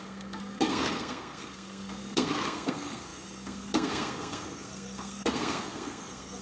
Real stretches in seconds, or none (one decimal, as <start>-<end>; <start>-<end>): none